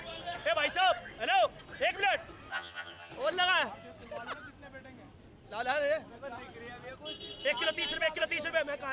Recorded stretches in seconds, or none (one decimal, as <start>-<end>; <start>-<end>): 0.0-2.5; 3.1-8.9